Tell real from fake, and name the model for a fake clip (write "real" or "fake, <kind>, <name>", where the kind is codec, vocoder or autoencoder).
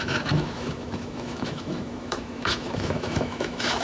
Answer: fake, autoencoder, DAC-VAE